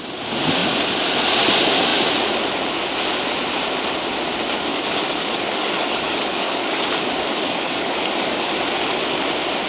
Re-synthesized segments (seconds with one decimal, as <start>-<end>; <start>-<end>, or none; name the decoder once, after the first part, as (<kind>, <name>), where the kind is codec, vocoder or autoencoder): 4.7-8.5 (codec, DAC)